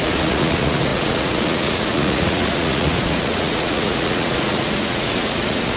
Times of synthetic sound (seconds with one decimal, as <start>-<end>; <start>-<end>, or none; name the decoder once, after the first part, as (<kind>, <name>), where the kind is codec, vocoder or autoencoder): 0.0-5.8 (vocoder, Vocos)